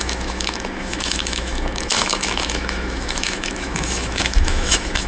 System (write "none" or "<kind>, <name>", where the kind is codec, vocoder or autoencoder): autoencoder, DAC-VAE